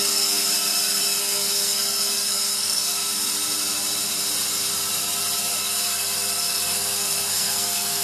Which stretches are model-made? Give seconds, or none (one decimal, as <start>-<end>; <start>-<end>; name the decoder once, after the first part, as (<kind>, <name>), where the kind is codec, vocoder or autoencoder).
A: 0.0-0.4 (codec, SNAC); 1.2-3.3; 5.6-8.0